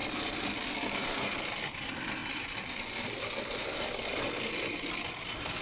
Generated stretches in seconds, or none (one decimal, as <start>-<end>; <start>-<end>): none